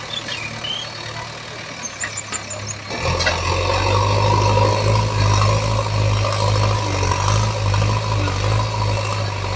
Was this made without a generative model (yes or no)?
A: yes